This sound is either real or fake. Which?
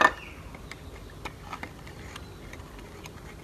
real